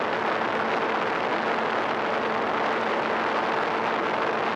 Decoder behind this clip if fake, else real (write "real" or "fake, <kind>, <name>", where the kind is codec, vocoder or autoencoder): real